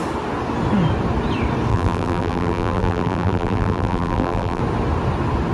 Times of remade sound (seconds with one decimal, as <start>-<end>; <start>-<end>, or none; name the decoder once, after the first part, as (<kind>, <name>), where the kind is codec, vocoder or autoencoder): 1.7-4.6 (vocoder, BigVGAN v2)